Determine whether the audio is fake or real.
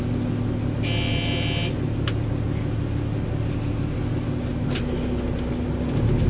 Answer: real